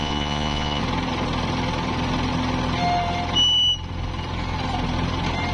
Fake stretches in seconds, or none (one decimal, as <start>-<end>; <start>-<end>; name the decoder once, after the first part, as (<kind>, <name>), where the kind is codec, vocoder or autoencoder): 0.0-0.8 (vocoder, Vocos)

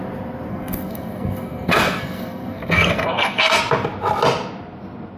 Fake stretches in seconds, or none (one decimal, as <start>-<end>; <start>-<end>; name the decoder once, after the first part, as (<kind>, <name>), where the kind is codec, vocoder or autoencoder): 0.5-3.6 (codec, SNAC)

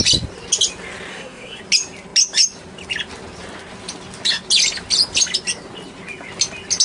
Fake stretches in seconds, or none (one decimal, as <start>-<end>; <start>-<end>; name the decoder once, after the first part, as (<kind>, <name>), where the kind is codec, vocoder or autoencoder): 1.1-1.6 (codec, SNAC)